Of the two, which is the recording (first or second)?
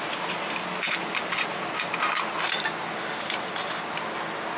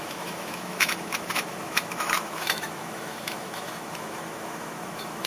first